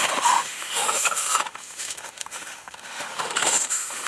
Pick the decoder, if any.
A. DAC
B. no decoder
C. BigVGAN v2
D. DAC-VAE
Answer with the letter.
D